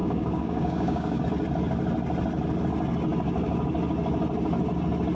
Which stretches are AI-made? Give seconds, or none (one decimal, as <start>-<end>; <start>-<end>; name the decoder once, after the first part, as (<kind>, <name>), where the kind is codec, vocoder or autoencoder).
0.0-1.2 (codec, DAC)